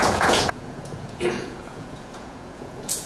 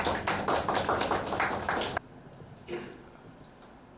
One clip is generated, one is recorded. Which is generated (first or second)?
first